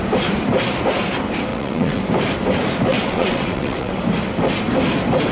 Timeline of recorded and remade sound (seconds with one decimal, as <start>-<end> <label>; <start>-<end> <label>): 0.0-1.5 recorded; 1.5-2.0 remade; 2.0-2.9 recorded; 2.9-4.0 remade; 4.0-5.3 recorded